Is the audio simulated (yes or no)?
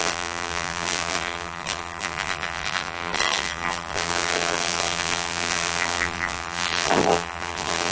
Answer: yes